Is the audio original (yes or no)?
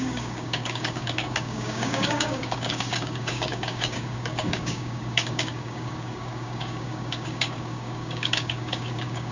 no